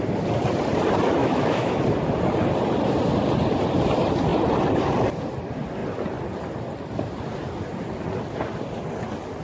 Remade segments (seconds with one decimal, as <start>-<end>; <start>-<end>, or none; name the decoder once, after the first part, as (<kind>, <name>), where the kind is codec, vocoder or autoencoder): 1.2-1.8 (autoencoder, DAC-VAE)